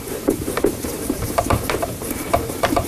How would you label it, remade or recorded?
remade